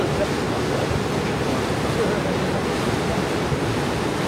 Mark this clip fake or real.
real